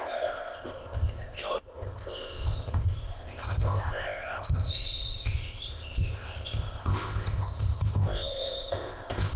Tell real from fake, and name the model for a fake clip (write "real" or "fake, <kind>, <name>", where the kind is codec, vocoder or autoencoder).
fake, codec, ZipCodec